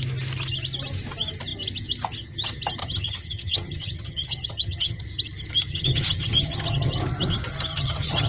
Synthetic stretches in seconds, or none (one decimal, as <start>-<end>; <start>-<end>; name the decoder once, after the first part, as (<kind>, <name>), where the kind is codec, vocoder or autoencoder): 2.8-5.0 (vocoder, HiFi-GAN); 5.7-6.9; 7.7-8.3

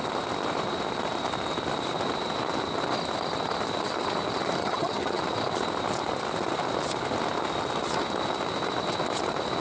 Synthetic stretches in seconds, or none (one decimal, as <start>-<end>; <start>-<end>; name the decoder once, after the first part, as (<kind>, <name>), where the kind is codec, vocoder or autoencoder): 4.6-5.2 (vocoder, HiFi-GAN)

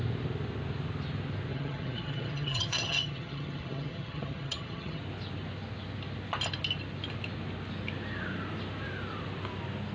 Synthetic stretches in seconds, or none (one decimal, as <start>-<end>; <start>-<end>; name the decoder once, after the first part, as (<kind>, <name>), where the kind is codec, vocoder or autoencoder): 1.5-5.0 (vocoder, HiFi-GAN)

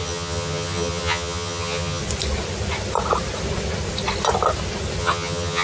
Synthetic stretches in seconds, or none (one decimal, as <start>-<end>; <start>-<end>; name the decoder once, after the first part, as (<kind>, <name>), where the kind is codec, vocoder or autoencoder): 0.0-2.0 (vocoder, HiFi-GAN); 5.0-5.6